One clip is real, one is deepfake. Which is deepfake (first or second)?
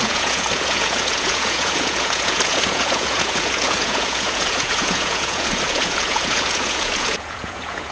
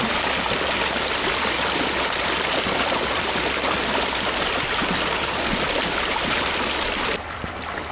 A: first